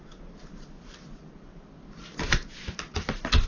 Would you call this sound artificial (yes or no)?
no